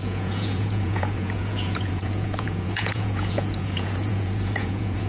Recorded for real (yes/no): no